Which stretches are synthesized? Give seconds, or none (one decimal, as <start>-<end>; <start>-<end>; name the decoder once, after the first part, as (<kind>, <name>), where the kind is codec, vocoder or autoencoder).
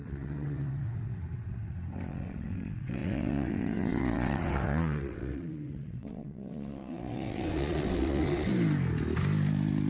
0.0-8.5 (vocoder, WaveNeXt)